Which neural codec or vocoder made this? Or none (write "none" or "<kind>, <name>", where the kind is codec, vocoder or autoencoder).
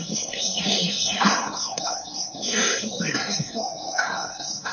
codec, SNAC